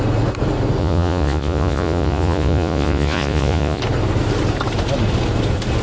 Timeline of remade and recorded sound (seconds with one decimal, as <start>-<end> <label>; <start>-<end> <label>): 0.0-0.8 recorded; 0.8-3.8 remade; 3.8-5.8 recorded